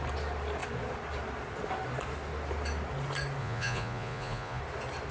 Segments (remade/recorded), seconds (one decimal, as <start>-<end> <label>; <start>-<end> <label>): 0.0-3.4 recorded; 3.4-4.6 remade; 4.6-5.1 recorded